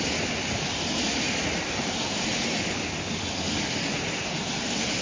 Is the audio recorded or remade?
remade